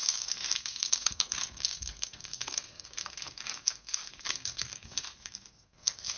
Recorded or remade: remade